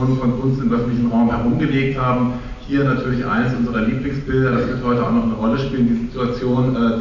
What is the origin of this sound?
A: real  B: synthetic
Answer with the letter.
A